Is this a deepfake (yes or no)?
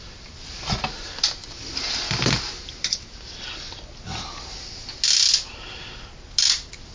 no